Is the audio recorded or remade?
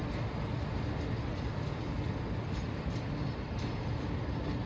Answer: recorded